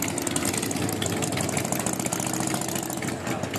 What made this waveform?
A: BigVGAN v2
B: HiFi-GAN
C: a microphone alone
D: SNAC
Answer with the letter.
C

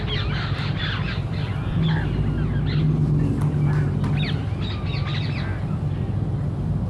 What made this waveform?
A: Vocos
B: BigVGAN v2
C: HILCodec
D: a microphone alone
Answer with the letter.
D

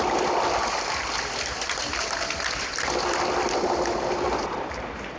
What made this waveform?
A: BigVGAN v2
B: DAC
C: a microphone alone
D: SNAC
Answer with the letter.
A